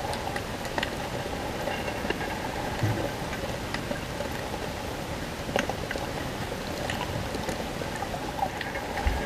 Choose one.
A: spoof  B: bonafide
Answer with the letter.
B